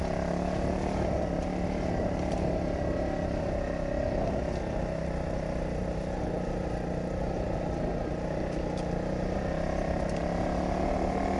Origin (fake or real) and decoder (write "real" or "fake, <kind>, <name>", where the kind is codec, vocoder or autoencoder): real